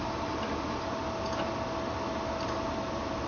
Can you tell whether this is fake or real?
real